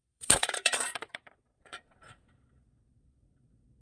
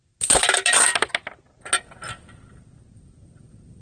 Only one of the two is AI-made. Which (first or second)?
first